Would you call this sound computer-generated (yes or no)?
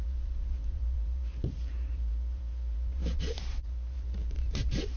yes